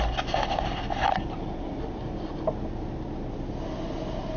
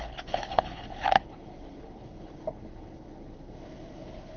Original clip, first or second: first